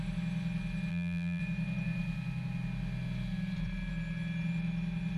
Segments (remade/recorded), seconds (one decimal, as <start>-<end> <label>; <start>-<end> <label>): 0.0-0.9 recorded; 0.9-1.4 remade; 1.4-5.2 recorded